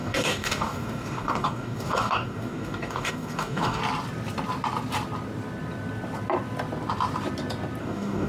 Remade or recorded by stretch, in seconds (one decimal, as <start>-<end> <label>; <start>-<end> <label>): 0.0-3.8 remade; 3.8-7.8 recorded; 7.8-8.3 remade